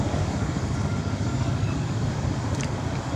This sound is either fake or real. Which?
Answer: fake